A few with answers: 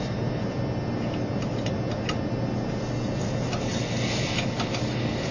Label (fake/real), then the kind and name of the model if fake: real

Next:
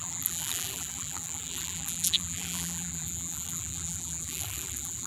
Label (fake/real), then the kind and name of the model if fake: fake, vocoder, BigVGAN v2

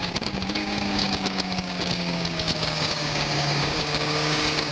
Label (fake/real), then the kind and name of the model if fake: fake, codec, DAC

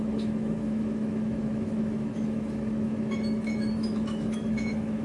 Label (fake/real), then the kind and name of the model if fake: fake, autoencoder, DAC-VAE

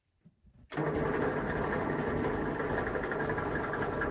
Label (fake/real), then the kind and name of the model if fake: real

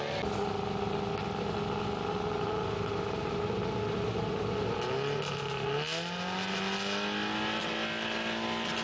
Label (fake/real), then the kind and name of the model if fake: real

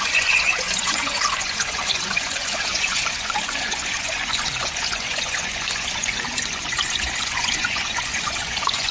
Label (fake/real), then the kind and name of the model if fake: fake, vocoder, Vocos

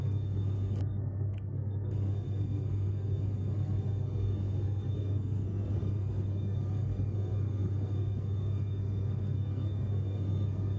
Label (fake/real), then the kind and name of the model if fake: fake, codec, SNAC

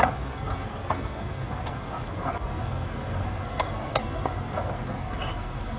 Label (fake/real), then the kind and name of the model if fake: fake, codec, SNAC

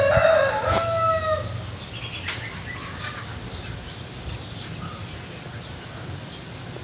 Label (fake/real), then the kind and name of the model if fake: real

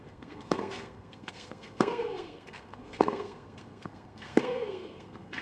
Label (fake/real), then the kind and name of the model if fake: fake, codec, SNAC